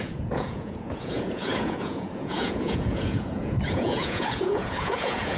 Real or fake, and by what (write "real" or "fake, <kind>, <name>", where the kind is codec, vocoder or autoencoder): fake, vocoder, Vocos